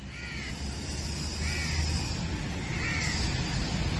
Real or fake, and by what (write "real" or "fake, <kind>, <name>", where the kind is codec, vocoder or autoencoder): real